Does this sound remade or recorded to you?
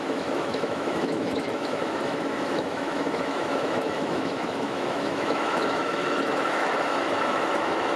remade